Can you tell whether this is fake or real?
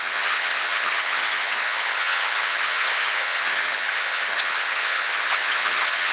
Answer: fake